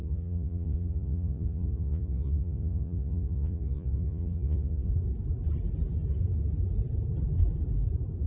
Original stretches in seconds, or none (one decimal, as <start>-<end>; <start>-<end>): 4.9-8.3